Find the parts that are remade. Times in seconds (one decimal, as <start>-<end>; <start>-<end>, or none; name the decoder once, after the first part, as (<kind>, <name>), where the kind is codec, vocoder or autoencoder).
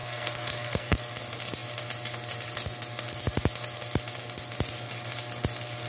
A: 0.0-1.0 (codec, SNAC)